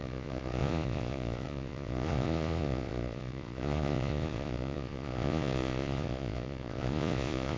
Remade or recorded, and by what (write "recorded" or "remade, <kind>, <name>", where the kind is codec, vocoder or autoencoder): remade, vocoder, Vocos